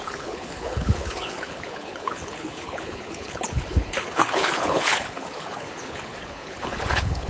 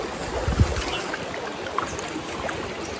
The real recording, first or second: second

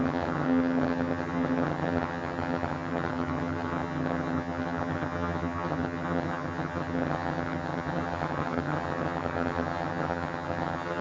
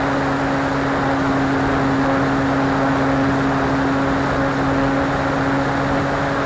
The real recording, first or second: second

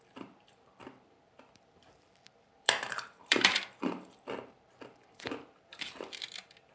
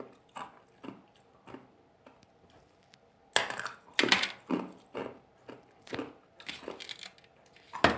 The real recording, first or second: second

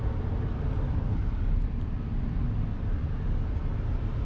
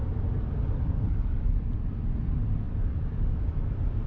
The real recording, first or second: first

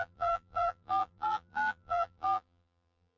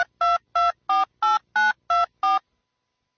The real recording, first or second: second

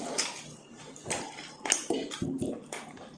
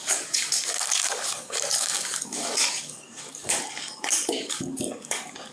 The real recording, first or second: first